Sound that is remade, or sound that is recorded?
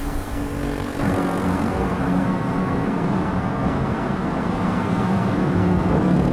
remade